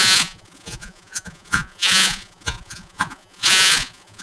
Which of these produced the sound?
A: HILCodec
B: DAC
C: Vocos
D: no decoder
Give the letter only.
C